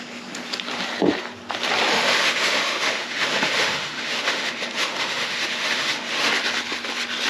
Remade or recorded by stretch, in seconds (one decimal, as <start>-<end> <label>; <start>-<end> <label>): 0.0-1.9 recorded; 1.9-6.3 remade; 6.3-7.3 recorded